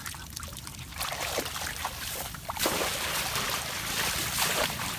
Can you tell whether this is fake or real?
fake